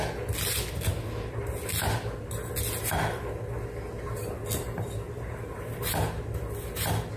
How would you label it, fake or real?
real